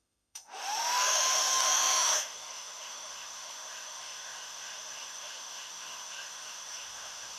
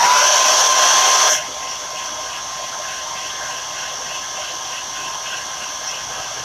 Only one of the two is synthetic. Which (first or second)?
first